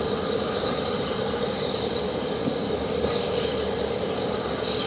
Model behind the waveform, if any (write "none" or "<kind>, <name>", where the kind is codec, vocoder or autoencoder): none